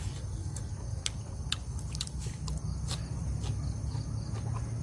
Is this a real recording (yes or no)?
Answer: yes